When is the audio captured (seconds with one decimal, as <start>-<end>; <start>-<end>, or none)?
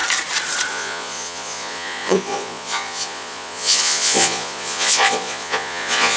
0.0-0.7